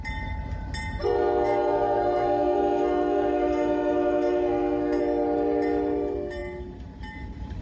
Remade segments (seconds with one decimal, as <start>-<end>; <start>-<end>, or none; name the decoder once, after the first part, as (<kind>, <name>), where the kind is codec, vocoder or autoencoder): 1.0-5.0 (codec, SNAC)